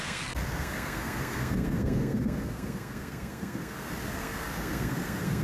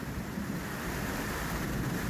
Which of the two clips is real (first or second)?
second